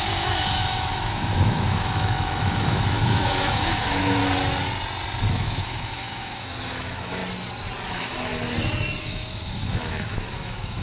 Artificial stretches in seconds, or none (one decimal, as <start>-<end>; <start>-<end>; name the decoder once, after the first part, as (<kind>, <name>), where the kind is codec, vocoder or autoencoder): 0.0-4.2 (autoencoder, DAC-VAE); 5.3-7.2; 7.9-8.3; 9.0-10.8